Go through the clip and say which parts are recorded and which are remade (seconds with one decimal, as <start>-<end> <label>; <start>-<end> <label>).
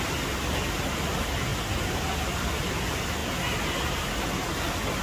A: 0.0-5.0 recorded